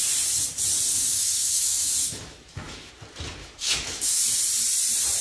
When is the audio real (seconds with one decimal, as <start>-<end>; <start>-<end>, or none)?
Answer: 0.0-0.9; 2.9-3.4; 4.2-5.2

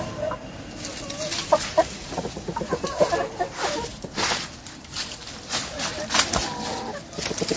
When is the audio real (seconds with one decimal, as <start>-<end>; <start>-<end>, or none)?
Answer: 0.0-1.4; 2.8-7.6